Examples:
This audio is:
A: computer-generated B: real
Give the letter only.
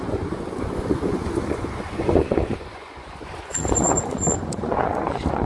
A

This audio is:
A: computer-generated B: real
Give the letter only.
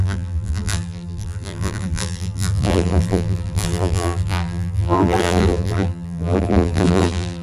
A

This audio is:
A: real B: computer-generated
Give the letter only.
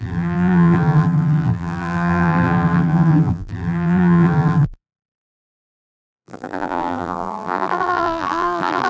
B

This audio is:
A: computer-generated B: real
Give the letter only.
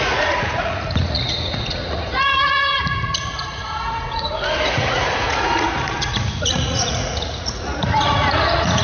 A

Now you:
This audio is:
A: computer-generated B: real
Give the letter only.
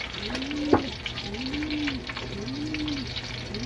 B